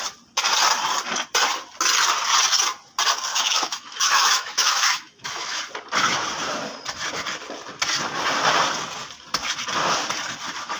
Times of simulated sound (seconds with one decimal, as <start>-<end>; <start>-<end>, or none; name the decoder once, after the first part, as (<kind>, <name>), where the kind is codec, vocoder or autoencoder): 3.3-5.6 (autoencoder, DAC-VAE)